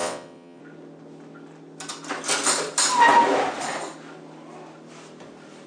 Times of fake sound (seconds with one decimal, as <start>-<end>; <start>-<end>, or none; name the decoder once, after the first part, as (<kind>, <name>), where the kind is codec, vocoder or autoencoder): 0.0-0.6 (vocoder, WaveNeXt)